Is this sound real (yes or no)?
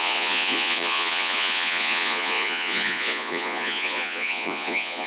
no